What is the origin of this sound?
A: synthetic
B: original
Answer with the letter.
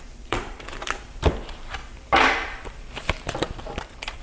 A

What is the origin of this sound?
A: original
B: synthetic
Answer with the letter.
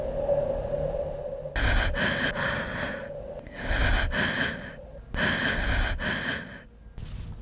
A